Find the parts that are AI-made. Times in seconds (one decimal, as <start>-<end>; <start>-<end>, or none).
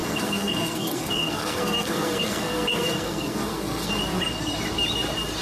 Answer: 0.0-3.9